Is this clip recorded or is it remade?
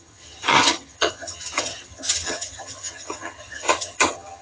remade